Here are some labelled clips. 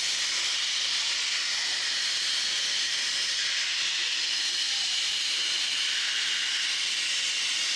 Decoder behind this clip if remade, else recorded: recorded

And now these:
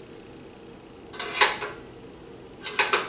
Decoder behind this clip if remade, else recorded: recorded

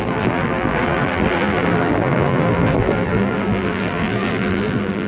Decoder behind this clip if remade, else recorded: remade, vocoder, BigVGAN v2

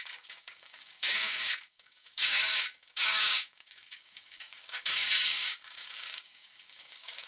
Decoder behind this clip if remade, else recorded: remade, codec, DAC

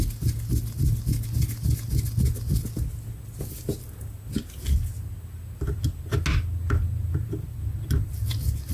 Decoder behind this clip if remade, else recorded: recorded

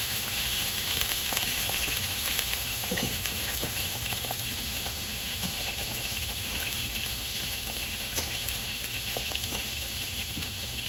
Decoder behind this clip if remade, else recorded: remade, autoencoder, DAC-VAE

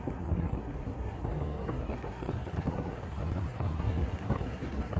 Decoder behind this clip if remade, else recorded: remade, codec, SNAC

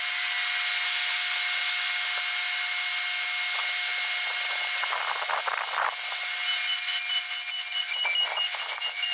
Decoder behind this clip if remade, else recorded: recorded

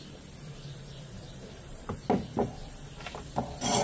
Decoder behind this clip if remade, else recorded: remade, vocoder, BigVGAN v2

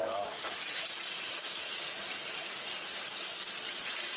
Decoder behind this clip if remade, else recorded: recorded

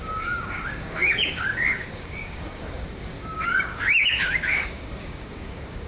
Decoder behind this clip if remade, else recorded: remade, codec, DAC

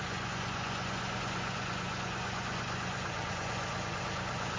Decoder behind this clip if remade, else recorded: remade, vocoder, Vocos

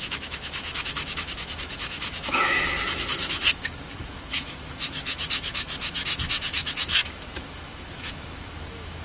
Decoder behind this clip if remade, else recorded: remade, autoencoder, DAC-VAE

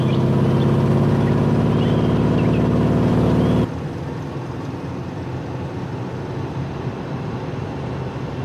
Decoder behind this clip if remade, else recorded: recorded